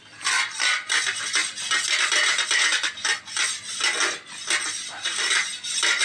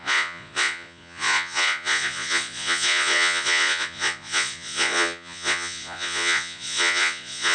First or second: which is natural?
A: first